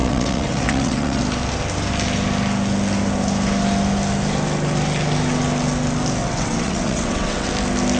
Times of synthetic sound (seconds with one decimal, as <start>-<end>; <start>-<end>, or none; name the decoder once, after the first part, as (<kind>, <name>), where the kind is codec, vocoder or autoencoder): 0.0-1.2 (vocoder, WaveNeXt); 6.2-7.5